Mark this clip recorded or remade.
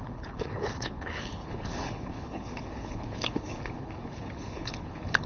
remade